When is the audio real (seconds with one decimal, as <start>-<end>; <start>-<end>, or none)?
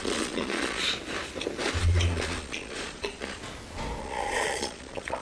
0.8-1.8; 3.4-4.0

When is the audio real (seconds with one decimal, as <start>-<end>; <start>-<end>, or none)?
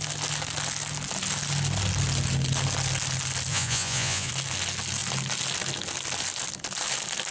0.0-3.5; 4.3-7.3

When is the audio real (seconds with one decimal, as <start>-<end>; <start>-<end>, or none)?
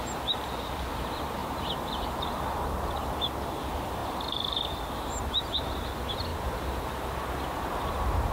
0.0-1.4; 3.1-4.0; 5.8-8.3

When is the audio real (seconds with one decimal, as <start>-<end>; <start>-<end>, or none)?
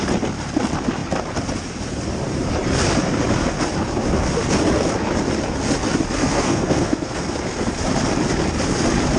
0.0-6.2; 7.3-9.2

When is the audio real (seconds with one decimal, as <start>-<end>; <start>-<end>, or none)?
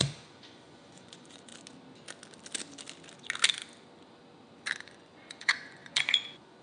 1.5-4.8